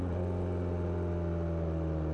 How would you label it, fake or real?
real